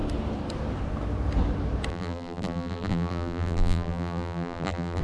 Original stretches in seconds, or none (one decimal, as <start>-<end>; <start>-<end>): 0.0-1.9